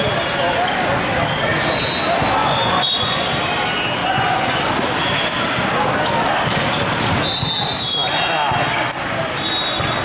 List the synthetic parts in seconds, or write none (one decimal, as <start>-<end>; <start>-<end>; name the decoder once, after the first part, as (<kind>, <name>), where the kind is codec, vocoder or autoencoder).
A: 2.4-3.2 (vocoder, Vocos); 4.0-4.6